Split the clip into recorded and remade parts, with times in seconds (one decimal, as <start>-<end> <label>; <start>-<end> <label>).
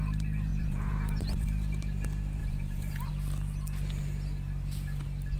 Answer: 0.0-0.5 recorded; 0.5-1.2 remade; 1.2-2.4 recorded; 2.4-3.1 remade; 3.1-5.4 recorded